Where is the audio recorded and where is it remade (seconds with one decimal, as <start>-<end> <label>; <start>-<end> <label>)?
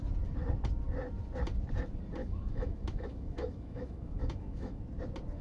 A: 0.0-2.2 recorded; 2.2-4.8 remade; 4.8-5.4 recorded